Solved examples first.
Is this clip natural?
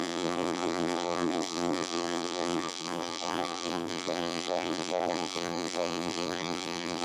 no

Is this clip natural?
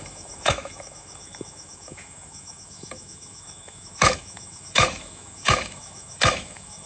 no